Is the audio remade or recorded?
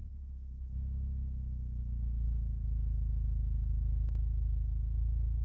recorded